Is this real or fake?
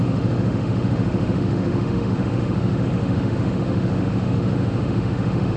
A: fake